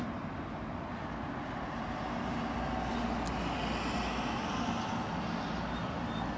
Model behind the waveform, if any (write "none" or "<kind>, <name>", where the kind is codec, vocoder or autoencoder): none